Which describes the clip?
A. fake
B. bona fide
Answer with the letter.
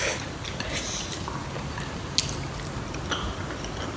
B